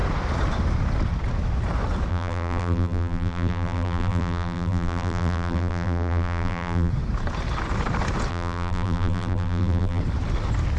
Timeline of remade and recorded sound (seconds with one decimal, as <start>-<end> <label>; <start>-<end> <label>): 0.0-2.1 recorded; 2.1-6.9 remade; 6.9-8.3 recorded; 8.3-10.0 remade; 10.0-10.8 recorded